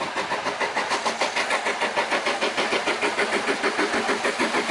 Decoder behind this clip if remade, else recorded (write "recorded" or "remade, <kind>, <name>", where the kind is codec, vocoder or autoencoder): recorded